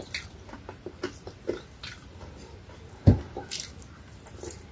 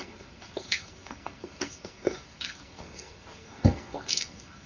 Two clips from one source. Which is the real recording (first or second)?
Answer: first